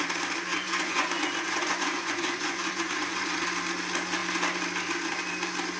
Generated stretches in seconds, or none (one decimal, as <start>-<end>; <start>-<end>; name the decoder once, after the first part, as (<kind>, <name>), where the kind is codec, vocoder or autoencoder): 0.5-3.3 (vocoder, Vocos)